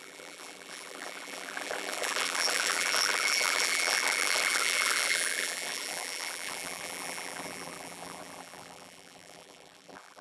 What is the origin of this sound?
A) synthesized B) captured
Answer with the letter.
A